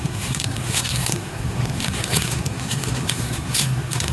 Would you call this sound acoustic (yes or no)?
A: no